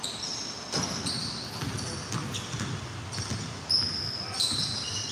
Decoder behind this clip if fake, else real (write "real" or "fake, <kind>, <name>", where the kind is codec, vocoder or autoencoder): real